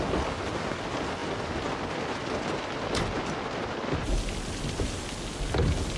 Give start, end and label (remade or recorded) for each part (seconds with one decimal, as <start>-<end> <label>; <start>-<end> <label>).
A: 0.0-6.0 recorded